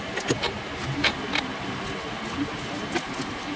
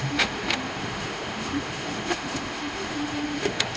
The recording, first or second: first